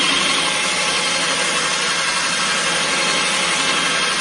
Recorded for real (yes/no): yes